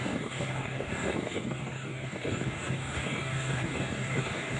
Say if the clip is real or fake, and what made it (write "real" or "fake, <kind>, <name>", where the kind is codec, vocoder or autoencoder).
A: fake, codec, DAC